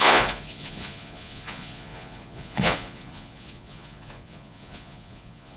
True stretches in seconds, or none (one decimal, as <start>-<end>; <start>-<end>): none